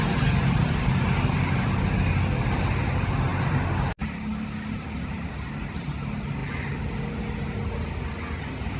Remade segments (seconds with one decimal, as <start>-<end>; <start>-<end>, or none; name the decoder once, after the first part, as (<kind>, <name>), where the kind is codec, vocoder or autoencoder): none